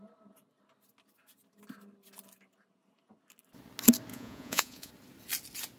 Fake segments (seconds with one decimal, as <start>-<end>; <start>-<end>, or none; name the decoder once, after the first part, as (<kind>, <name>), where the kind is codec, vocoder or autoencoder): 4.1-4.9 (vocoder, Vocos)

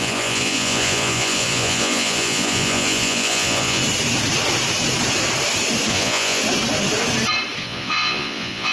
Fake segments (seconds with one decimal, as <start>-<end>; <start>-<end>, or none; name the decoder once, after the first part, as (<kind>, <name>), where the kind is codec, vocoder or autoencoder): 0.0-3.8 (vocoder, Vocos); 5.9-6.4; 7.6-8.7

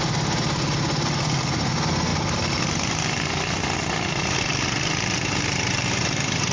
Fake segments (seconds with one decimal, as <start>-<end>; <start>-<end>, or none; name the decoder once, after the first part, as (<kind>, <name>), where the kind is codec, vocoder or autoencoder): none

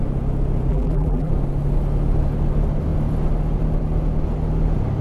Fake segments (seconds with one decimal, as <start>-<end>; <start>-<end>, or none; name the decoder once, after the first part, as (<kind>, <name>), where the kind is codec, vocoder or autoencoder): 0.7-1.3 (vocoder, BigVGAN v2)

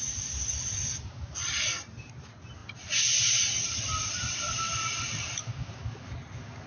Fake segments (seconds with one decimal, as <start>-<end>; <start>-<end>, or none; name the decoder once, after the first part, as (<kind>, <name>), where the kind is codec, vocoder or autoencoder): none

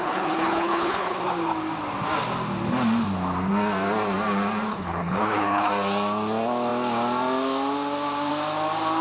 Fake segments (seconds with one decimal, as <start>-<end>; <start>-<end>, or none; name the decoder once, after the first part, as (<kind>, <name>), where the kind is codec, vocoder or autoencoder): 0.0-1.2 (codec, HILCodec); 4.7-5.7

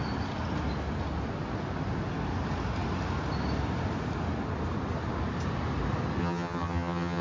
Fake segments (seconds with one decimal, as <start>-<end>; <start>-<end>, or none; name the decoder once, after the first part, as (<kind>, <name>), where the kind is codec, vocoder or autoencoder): 6.2-7.2 (vocoder, HiFi-GAN)

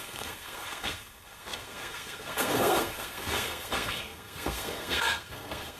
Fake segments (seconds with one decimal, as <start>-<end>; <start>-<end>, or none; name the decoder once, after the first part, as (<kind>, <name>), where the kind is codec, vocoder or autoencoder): 0.0-5.8 (codec, SNAC)